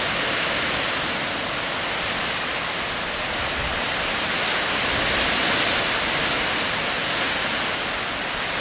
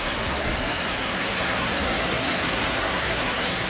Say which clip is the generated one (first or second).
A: second